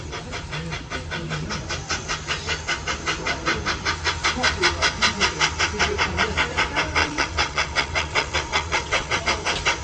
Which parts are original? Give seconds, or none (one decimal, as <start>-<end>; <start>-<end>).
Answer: 0.0-7.0; 9.2-9.8